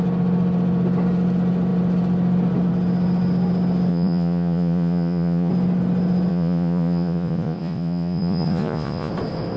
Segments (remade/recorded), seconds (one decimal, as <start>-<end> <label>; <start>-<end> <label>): 0.0-3.9 recorded; 3.9-5.5 remade; 5.5-6.3 recorded; 6.3-9.1 remade; 9.1-9.6 recorded